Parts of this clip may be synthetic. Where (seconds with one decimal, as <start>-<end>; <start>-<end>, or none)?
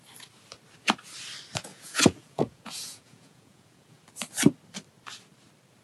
1.7-4.0